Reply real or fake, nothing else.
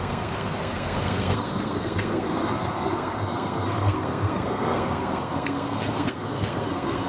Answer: fake